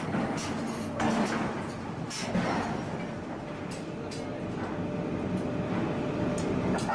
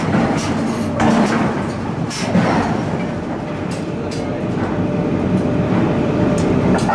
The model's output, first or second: second